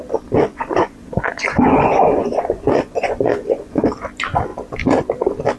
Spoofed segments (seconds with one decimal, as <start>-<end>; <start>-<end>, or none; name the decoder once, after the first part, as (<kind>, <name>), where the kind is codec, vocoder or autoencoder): 0.5-3.9 (vocoder, Vocos)